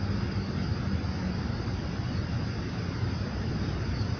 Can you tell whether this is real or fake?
real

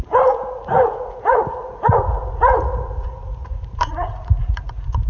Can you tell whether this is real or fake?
fake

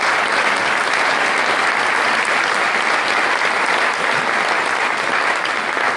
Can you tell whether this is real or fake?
real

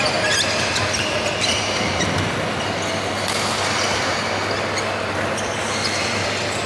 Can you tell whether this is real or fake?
real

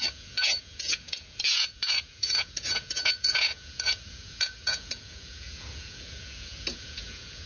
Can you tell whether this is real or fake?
fake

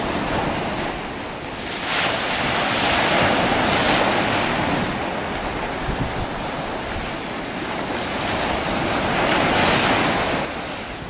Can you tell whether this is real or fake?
real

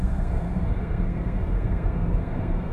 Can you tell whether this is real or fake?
fake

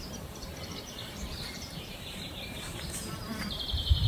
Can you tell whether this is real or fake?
fake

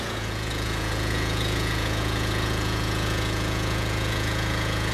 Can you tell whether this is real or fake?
fake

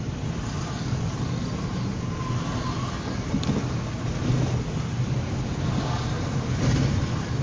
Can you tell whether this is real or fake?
real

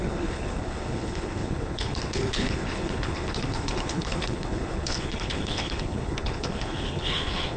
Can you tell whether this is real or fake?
fake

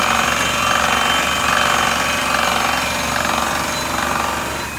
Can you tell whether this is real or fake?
real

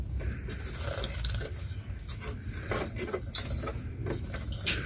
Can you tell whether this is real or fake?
real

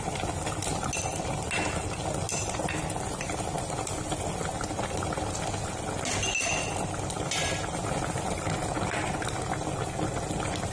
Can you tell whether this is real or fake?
real